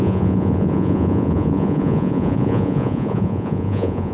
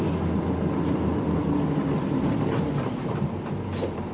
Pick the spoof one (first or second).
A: first